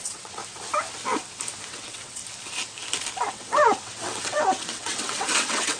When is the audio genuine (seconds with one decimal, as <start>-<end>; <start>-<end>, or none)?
0.4-1.7; 2.2-3.3